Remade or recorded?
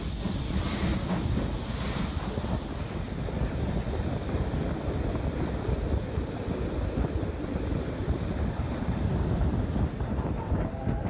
recorded